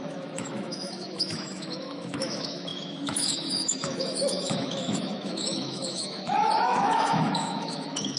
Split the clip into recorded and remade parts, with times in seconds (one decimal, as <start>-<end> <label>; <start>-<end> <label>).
0.0-8.2 remade